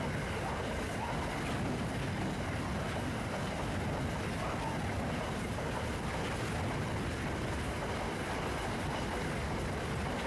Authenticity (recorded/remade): recorded